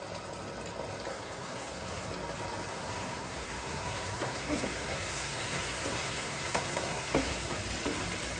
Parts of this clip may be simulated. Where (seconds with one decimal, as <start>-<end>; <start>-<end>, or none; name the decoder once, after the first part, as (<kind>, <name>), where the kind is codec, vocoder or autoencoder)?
1.1-2.1 (codec, SNAC); 2.7-7.6

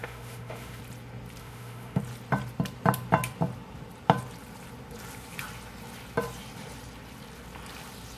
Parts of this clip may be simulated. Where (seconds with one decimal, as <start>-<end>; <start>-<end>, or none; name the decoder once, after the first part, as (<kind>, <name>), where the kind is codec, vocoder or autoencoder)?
0.0-0.8 (autoencoder, DAC-VAE); 1.4-2.0

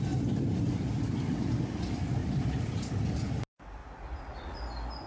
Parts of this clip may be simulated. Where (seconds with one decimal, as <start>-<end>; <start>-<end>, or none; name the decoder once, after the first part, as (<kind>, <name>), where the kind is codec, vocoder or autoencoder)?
3.8-4.6 (vocoder, Vocos)

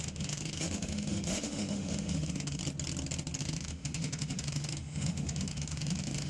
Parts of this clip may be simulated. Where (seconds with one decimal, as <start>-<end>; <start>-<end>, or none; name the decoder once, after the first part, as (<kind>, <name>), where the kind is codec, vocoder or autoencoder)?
0.0-2.6 (autoencoder, DAC-VAE); 3.4-6.3

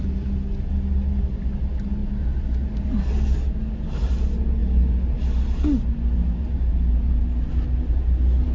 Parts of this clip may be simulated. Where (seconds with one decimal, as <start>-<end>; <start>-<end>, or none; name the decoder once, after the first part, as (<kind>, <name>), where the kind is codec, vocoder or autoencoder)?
none

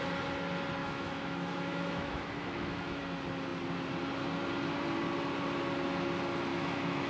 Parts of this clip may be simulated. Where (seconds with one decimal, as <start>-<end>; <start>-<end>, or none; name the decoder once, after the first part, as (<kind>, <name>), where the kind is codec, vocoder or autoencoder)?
0.8-3.0 (autoencoder, DAC-VAE); 6.5-7.1

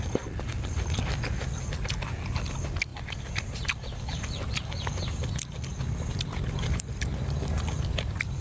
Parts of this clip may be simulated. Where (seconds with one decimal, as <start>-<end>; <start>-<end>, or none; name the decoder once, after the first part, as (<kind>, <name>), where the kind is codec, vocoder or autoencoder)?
none

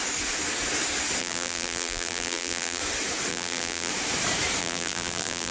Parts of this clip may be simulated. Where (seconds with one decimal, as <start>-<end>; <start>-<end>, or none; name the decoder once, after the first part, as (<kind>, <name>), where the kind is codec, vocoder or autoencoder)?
1.2-2.8 (vocoder, BigVGAN v2); 3.3-3.9; 4.6-5.5